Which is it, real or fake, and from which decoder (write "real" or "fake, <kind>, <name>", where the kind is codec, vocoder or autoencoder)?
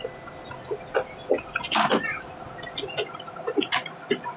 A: real